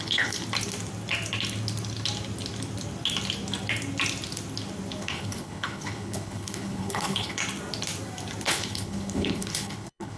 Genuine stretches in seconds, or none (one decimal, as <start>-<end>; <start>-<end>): 0.4-5.0; 7.4-8.5